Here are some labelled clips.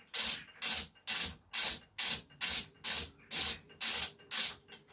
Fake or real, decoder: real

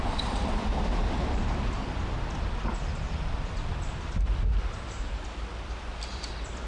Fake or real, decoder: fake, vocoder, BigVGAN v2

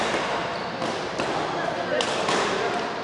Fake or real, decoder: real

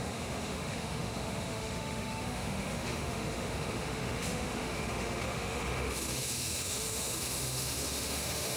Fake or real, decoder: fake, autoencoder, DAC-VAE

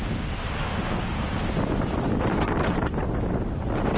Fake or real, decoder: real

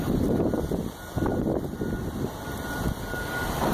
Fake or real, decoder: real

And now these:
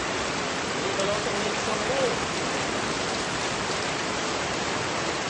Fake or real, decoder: fake, vocoder, BigVGAN v2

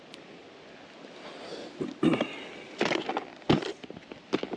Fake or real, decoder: real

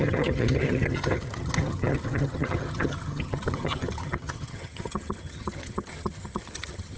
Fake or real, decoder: fake, vocoder, HiFi-GAN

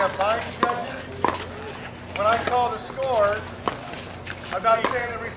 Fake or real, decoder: real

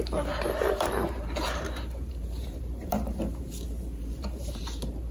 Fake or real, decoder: fake, vocoder, BigVGAN v2